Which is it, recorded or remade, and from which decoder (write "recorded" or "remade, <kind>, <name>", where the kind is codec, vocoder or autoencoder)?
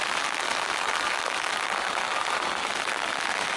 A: recorded